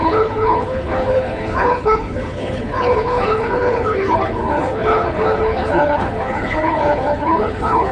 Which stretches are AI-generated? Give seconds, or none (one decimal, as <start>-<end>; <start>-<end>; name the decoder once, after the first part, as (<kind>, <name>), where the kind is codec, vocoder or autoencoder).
0.0-7.9 (codec, HILCodec)